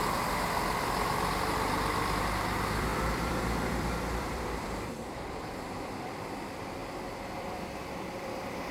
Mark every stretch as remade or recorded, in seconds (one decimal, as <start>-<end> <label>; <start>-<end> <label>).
0.0-2.2 recorded; 2.2-6.8 remade; 6.8-7.4 recorded; 7.4-8.7 remade